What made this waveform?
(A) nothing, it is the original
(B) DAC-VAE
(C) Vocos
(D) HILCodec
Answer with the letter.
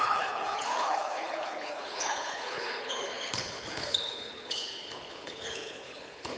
D